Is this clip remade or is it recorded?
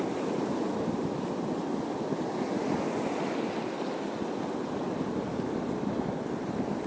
recorded